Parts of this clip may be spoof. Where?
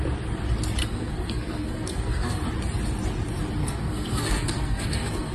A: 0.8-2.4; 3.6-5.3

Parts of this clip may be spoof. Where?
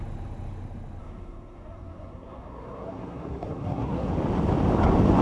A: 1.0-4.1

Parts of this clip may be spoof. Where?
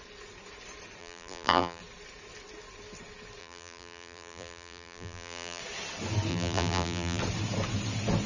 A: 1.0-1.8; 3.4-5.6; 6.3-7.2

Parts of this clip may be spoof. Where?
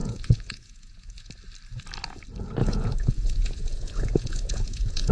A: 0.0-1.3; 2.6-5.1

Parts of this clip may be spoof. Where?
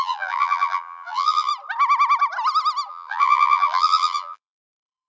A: 0.0-1.5; 2.9-5.1